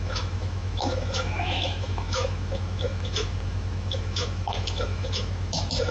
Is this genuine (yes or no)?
no